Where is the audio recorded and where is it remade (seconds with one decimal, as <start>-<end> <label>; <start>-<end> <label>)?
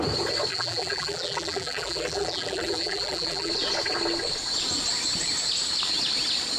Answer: 0.0-0.5 recorded; 0.5-3.5 remade; 3.5-6.6 recorded